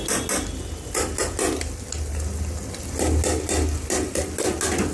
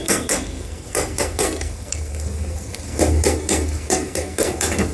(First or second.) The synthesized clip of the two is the second